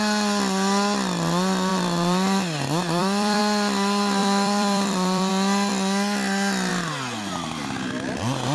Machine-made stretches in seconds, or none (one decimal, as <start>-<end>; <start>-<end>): 1.7-3.4; 4.2-5.3